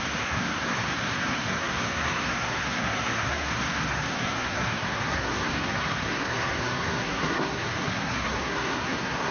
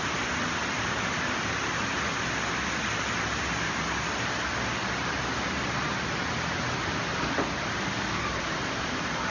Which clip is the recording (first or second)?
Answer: second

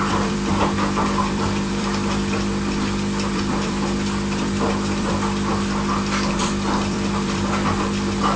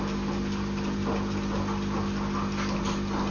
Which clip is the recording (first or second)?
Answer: second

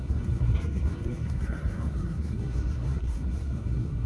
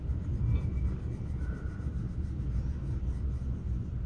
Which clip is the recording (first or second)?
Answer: second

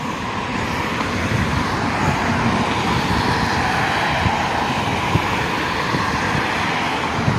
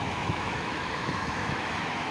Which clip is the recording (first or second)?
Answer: first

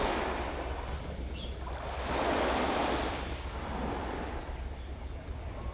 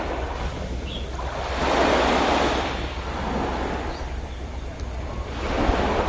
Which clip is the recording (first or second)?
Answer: second